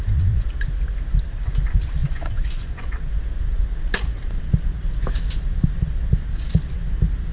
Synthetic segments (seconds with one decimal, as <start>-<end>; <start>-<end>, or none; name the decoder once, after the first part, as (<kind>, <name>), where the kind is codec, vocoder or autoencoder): 2.0-3.1 (vocoder, Vocos)